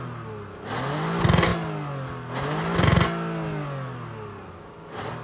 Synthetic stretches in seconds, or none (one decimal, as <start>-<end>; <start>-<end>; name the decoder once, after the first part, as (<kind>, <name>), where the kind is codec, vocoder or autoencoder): none